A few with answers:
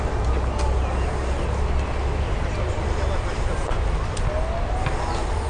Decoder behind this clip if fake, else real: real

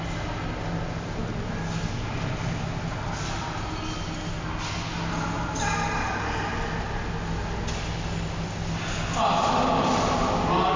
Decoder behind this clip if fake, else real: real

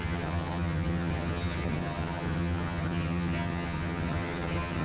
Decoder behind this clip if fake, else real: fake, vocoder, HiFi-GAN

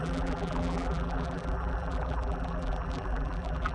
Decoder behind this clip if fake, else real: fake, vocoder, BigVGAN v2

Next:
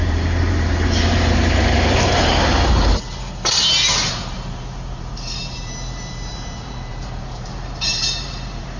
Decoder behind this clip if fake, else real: fake, vocoder, BigVGAN v2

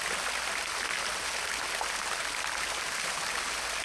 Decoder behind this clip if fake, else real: real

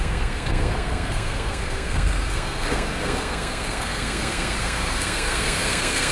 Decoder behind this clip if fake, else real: fake, codec, SNAC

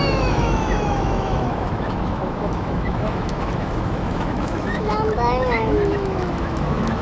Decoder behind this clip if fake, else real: fake, autoencoder, DAC-VAE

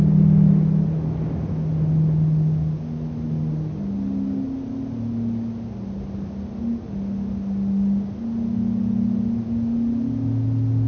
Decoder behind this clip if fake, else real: real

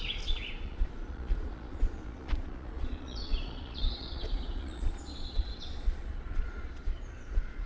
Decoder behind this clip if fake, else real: fake, vocoder, Vocos